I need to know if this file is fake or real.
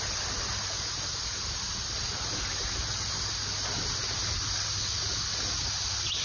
real